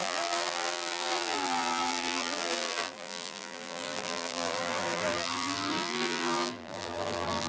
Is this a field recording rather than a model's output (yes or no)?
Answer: no